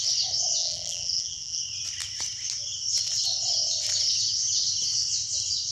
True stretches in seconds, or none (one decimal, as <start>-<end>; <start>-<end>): 0.0-0.6; 1.6-5.7